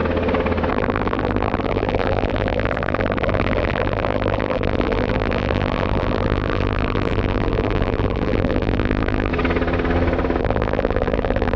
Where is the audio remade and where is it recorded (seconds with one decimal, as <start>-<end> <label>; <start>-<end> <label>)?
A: 0.0-0.7 recorded; 0.7-9.3 remade; 9.3-10.4 recorded; 10.4-11.6 remade